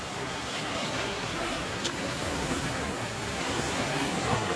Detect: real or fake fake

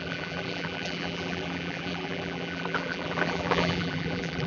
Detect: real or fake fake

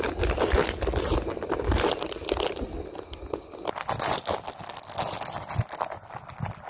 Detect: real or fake real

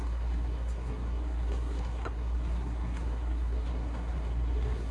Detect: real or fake fake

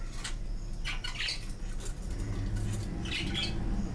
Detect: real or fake real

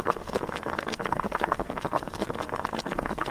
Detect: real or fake fake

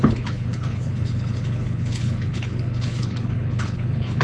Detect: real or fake fake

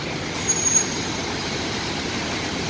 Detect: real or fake real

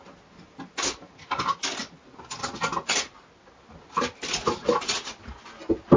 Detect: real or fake real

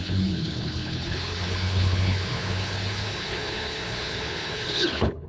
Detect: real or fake fake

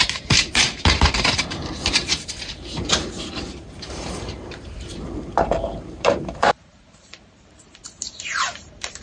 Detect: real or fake fake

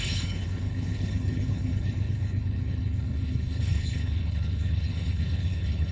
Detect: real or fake fake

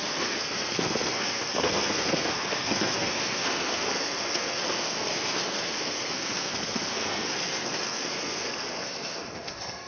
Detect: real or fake fake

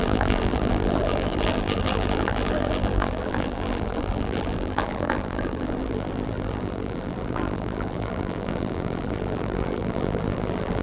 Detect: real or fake fake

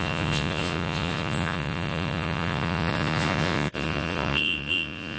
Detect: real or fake fake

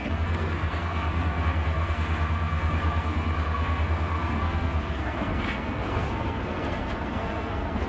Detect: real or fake fake